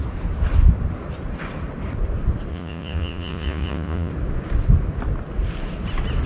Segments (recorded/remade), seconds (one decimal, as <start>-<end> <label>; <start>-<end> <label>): 0.0-2.5 recorded; 2.5-4.1 remade; 4.1-6.3 recorded